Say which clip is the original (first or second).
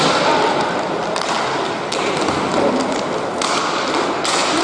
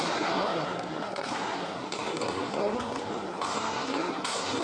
first